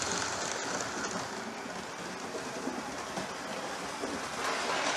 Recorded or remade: recorded